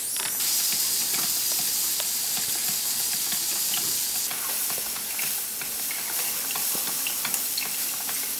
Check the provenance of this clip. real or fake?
real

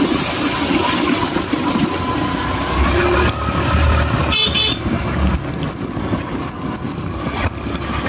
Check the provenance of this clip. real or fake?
real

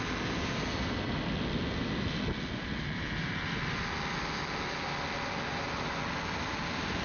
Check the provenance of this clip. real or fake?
real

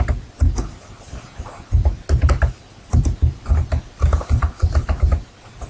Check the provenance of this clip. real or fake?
real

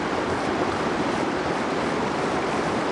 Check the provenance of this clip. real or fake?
real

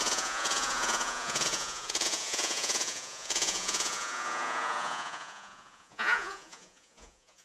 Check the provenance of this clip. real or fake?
fake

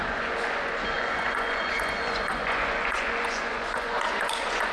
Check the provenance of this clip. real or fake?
fake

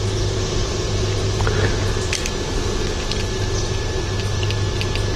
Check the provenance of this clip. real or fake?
real